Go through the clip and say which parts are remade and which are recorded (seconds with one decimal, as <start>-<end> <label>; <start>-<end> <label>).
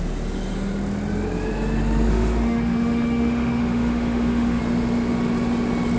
0.0-2.1 recorded; 2.1-4.6 remade; 4.6-6.0 recorded